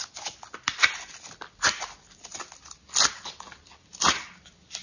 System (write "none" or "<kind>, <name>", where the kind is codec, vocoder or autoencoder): none